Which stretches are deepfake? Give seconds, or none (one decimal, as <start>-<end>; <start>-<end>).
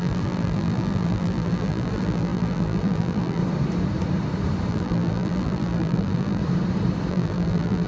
0.0-3.4; 4.7-6.4; 7.1-7.9